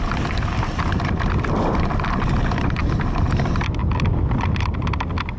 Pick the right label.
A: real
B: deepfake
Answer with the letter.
A